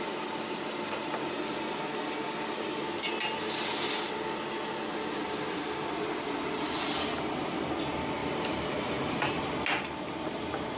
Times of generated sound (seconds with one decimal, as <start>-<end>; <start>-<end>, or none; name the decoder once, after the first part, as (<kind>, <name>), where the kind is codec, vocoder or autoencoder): 8.2-9.3 (vocoder, BigVGAN v2)